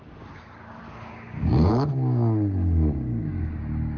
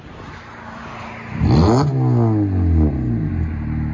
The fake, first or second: first